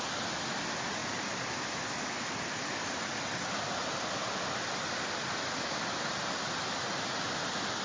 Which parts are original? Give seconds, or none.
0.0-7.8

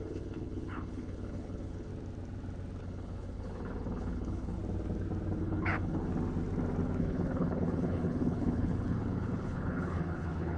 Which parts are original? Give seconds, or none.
1.9-2.8; 4.6-5.4; 6.1-7.0

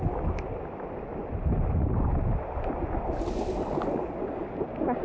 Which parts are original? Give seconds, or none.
0.0-5.0